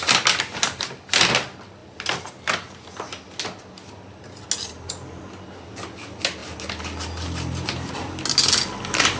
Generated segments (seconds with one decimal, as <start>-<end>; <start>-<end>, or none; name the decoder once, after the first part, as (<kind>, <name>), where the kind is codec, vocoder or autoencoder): none